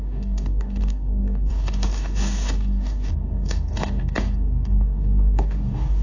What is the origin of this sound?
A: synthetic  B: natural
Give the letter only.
A